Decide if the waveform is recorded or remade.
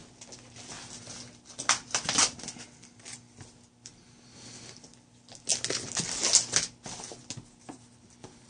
recorded